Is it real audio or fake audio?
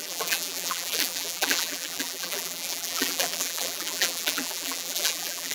fake